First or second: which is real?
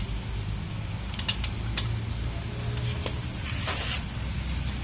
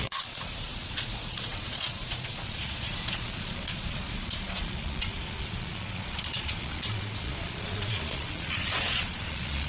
first